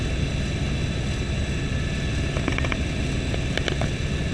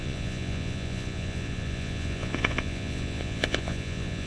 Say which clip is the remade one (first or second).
second